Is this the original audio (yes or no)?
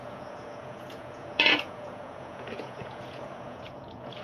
no